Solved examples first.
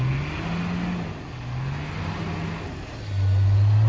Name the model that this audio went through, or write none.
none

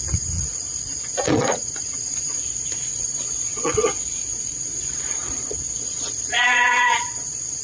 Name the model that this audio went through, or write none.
vocoder, Vocos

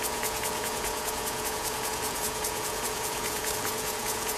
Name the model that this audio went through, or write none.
vocoder, Vocos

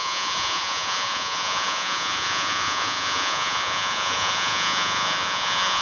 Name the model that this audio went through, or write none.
vocoder, Vocos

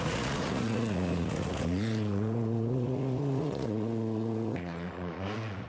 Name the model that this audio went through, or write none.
vocoder, Vocos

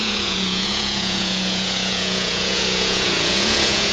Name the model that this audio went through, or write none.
vocoder, Vocos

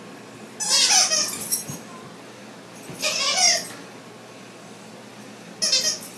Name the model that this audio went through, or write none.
none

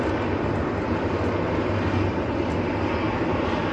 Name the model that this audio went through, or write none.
none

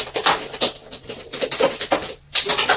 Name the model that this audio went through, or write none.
none